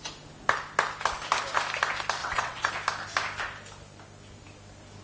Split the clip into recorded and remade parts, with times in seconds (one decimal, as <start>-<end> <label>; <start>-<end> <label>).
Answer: 0.0-2.2 recorded; 2.2-2.7 remade; 2.7-5.0 recorded